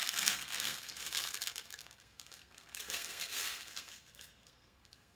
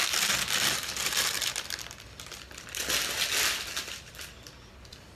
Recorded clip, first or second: second